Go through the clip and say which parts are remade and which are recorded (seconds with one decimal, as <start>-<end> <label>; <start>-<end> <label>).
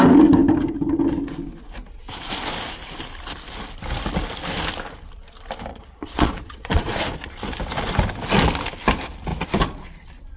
0.0-5.7 recorded; 5.7-7.0 remade; 7.0-10.4 recorded